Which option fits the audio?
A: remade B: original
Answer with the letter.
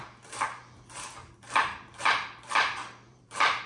A